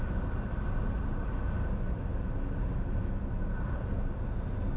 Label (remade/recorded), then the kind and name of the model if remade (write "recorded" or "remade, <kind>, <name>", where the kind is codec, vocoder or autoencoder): recorded